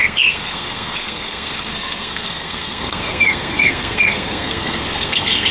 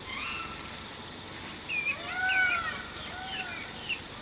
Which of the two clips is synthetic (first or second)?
first